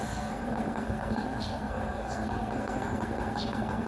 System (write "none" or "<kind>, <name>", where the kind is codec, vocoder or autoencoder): codec, SNAC